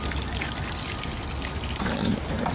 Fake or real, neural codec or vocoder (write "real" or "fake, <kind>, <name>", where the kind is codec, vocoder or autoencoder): real